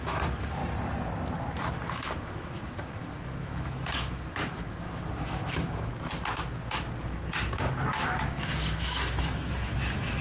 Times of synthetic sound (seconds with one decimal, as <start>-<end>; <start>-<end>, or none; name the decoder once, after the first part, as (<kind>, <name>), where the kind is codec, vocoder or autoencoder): 0.0-0.6 (autoencoder, DAC-VAE); 1.9-5.9; 7.9-10.2